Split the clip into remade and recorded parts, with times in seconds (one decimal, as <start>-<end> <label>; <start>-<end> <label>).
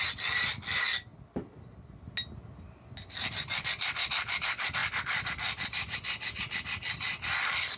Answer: 0.0-7.8 recorded